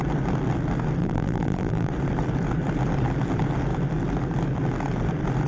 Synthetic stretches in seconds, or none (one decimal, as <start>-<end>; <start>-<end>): 1.0-1.9